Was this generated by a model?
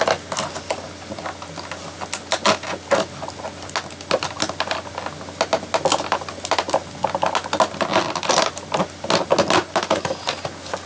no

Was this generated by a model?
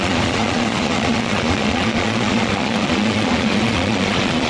yes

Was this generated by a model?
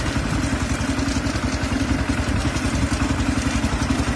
no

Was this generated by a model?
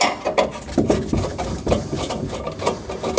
no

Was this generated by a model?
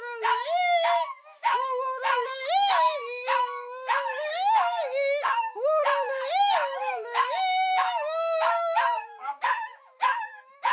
yes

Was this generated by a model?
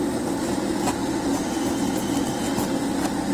no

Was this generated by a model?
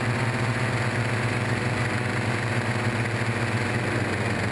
no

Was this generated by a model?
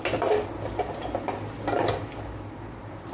no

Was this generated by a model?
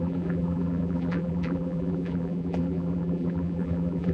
yes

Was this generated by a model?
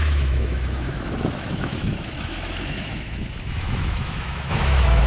yes